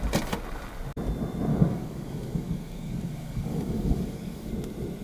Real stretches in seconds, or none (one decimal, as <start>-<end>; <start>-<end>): 0.0-1.5; 4.5-5.0